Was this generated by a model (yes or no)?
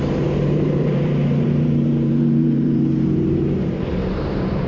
yes